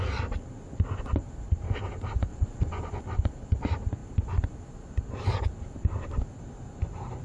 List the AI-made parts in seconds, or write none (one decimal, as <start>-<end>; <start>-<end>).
2.3-3.0